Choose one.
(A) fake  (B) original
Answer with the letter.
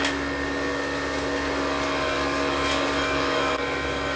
A